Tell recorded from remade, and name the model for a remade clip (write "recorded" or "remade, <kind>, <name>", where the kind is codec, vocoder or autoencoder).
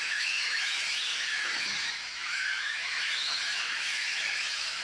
remade, autoencoder, DAC-VAE